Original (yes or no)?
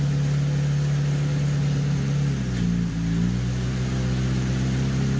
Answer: yes